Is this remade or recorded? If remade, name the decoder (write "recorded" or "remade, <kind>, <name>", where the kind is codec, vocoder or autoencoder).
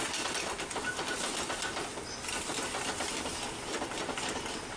recorded